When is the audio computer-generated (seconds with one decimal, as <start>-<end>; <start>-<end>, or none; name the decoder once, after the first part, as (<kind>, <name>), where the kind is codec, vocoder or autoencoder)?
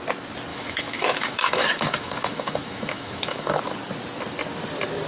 0.5-3.6 (autoencoder, DAC-VAE)